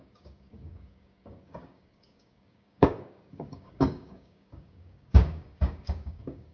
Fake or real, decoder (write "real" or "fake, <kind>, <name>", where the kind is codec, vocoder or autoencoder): fake, codec, DAC